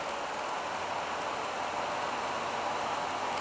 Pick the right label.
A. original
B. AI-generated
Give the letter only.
A